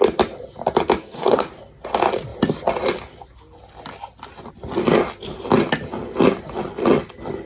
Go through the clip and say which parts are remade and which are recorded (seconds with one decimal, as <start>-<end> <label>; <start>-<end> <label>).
0.0-1.0 recorded; 1.0-1.5 remade; 1.5-7.5 recorded